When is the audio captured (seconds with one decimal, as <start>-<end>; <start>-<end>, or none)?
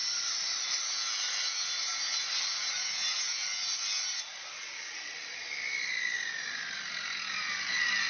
0.8-8.1